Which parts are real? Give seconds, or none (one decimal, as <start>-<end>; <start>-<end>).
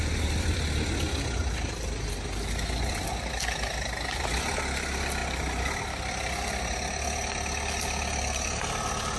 0.0-9.2